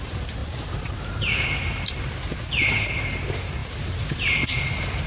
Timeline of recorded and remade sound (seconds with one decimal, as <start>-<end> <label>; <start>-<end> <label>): 0.0-3.6 remade; 3.6-4.2 recorded; 4.2-5.1 remade